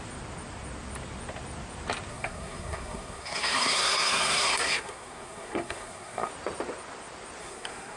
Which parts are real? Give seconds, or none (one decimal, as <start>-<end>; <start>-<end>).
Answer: 0.0-2.1; 6.3-7.4